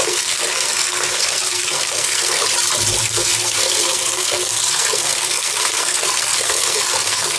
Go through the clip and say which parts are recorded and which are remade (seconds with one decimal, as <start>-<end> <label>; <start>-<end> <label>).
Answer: 0.0-2.4 remade; 2.4-3.0 recorded; 3.0-7.4 remade